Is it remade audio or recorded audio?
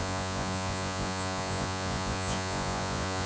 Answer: remade